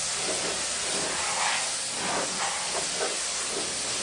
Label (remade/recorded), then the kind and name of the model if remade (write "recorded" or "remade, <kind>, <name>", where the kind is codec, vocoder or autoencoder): recorded